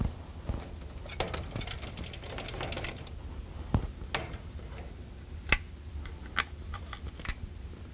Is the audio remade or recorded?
recorded